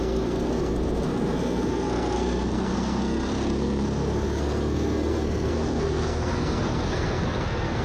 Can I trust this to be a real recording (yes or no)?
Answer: no